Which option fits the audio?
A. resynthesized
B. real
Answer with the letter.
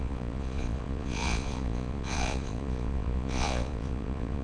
A